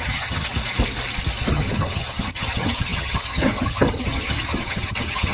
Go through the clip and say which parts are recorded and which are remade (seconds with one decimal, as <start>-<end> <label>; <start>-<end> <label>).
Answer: 0.0-0.5 remade; 0.5-1.5 recorded; 1.5-5.3 remade